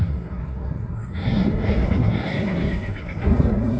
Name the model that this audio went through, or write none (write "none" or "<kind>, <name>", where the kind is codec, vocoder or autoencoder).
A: codec, SNAC